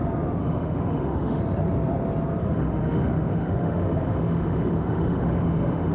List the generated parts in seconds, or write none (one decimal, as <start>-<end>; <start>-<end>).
0.4-1.4; 2.4-5.9